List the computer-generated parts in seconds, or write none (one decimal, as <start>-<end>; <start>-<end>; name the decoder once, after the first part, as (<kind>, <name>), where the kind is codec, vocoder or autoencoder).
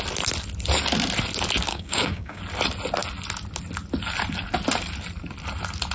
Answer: 1.7-2.4 (codec, DAC)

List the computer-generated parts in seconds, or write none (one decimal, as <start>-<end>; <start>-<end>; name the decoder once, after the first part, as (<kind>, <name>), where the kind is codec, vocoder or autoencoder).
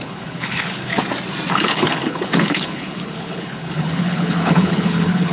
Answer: 0.0-0.9 (codec, HILCodec); 1.5-5.3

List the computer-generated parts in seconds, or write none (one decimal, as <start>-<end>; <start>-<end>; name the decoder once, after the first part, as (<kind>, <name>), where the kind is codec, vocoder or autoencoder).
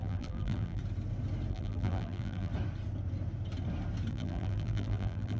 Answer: 0.0-0.8 (vocoder, BigVGAN v2); 1.5-2.5; 4.1-5.4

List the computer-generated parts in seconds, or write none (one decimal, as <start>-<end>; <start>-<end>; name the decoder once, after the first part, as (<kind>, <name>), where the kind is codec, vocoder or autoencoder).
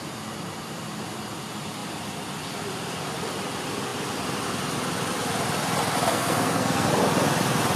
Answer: 6.1-6.9 (codec, SNAC)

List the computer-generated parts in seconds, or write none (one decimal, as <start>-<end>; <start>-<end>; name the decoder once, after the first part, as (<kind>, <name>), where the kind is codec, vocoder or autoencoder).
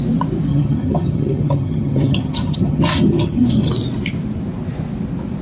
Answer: 0.5-3.7 (vocoder, HiFi-GAN)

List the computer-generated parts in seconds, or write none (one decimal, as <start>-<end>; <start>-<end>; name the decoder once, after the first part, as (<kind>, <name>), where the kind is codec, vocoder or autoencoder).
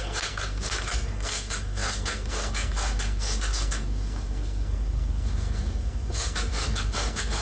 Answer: 0.0-7.4 (codec, SNAC)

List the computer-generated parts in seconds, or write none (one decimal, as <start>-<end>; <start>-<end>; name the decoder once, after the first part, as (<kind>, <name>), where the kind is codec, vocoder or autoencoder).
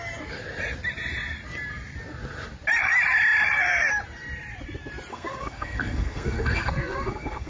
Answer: 5.1-7.5 (codec, SNAC)